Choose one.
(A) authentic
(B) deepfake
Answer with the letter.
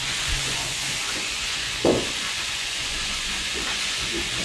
B